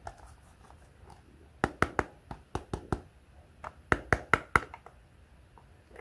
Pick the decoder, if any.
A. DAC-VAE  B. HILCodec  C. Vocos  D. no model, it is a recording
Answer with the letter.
D